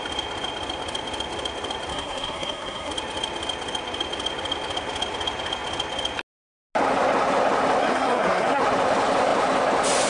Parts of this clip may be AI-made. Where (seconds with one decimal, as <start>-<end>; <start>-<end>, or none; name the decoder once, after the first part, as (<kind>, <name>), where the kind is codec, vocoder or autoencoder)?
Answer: 1.9-2.9 (codec, SNAC); 7.8-8.6